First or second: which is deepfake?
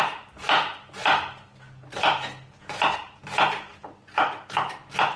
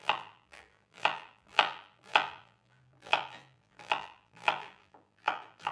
second